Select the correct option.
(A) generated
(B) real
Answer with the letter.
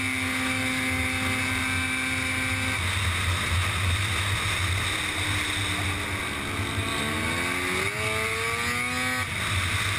B